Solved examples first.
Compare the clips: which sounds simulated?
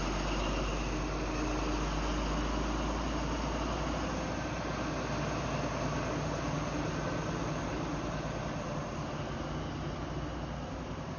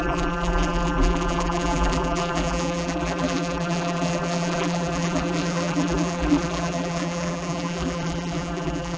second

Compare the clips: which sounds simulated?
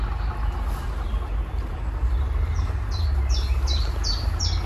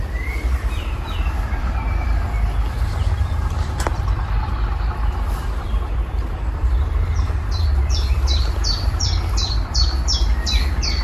second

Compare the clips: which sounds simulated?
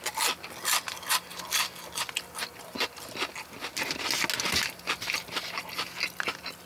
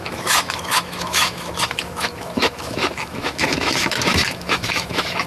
second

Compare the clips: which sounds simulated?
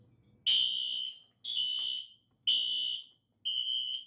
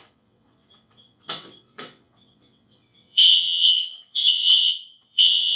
second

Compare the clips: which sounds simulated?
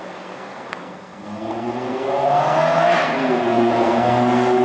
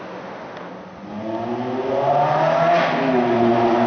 first